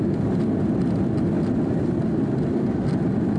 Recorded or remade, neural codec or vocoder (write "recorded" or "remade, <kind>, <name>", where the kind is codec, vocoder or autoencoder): remade, vocoder, BigVGAN v2